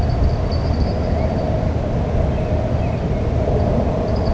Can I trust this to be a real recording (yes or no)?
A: yes